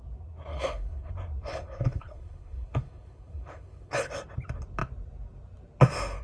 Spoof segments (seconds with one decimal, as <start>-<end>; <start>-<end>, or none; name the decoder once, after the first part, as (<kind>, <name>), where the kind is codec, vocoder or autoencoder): 0.5-1.1 (codec, HILCodec); 1.5-4.1